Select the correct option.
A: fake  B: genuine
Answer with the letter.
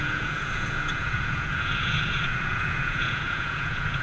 A